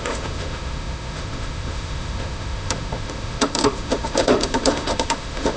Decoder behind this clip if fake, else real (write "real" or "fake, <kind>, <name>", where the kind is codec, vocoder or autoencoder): fake, autoencoder, DAC-VAE